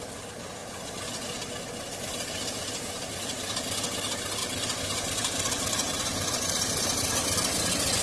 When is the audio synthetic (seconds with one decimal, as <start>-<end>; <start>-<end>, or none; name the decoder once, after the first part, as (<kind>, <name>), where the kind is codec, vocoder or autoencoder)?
none